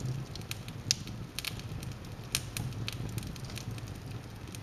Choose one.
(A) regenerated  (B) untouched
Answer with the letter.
B